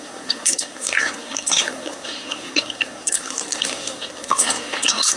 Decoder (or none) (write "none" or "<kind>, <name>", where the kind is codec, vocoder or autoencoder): codec, SNAC